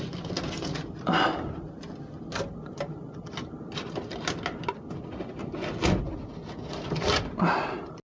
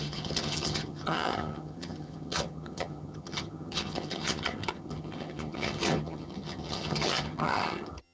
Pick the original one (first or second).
first